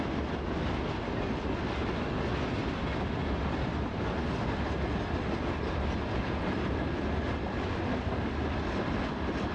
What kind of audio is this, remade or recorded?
recorded